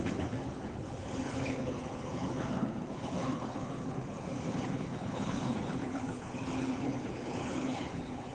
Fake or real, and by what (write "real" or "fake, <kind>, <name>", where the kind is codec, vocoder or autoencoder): fake, codec, HILCodec